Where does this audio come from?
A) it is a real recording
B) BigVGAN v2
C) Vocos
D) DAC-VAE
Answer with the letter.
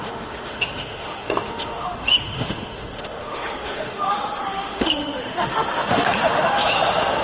D